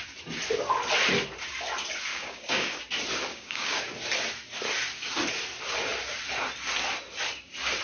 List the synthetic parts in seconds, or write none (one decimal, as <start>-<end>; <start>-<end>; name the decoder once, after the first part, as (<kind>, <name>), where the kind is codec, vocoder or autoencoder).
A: 2.1-2.8 (codec, DAC); 3.3-3.8